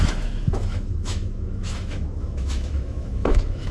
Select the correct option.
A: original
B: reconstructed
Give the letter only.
B